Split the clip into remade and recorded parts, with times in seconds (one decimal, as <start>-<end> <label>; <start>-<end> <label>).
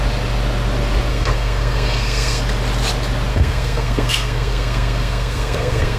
0.0-1.1 recorded; 1.1-2.4 remade; 2.4-3.3 recorded; 3.3-6.0 remade